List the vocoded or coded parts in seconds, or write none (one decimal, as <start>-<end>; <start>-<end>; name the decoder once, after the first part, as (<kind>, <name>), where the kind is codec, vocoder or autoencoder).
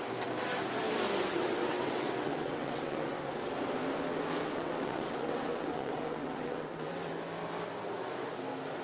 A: 1.3-3.3 (vocoder, WaveNeXt); 4.4-7.1